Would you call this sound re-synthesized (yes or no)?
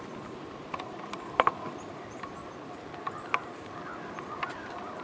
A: no